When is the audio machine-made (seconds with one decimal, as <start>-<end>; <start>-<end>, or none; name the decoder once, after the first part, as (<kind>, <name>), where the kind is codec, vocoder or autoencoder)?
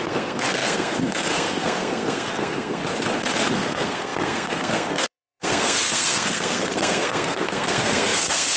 0.0-2.8 (codec, SNAC); 3.5-8.6